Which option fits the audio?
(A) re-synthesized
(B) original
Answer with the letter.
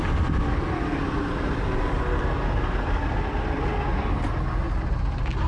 B